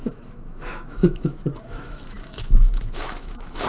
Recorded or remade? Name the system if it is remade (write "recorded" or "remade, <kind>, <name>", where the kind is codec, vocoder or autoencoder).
remade, autoencoder, DAC-VAE